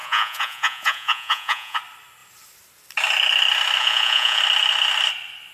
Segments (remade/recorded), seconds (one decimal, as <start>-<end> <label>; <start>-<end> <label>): 0.0-1.8 remade; 1.8-3.8 recorded; 3.8-4.4 remade; 4.4-5.5 recorded